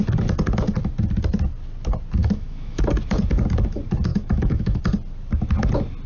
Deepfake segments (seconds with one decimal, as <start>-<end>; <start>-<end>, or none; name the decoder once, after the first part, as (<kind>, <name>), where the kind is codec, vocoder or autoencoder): 2.2-2.8 (autoencoder, DAC-VAE); 4.1-4.8